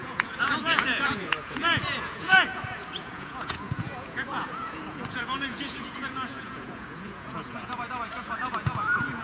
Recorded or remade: remade